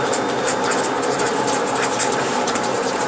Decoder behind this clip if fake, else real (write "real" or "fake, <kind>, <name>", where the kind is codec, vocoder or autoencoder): fake, vocoder, BigVGAN v2